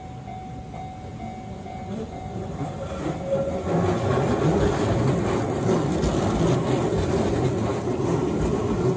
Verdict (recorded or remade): recorded